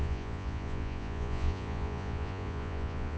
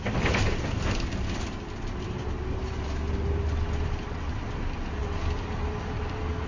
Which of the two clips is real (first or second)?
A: second